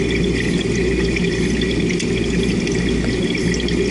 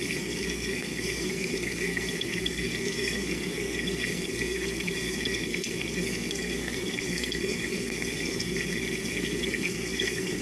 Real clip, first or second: first